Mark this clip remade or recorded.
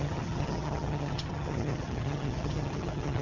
remade